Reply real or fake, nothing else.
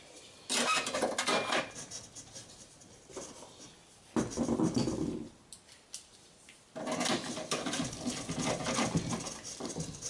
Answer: real